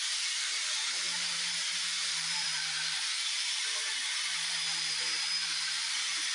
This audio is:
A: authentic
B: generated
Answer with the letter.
B